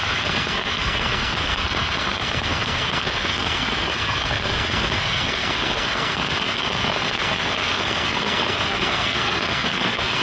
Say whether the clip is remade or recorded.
remade